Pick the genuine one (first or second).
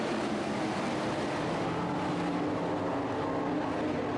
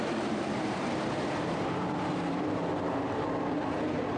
first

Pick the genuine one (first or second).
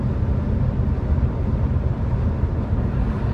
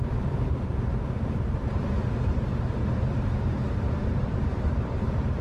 first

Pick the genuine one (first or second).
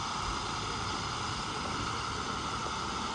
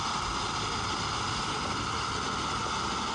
second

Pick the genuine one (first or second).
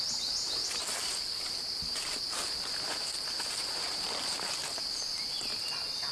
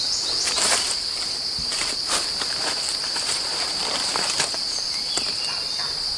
first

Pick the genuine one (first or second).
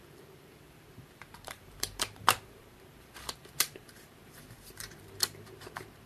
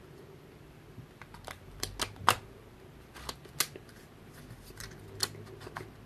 second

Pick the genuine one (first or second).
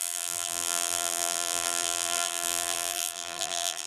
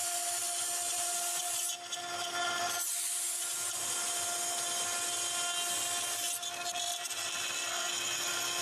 second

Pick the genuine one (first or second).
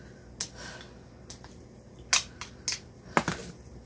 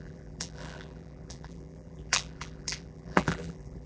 first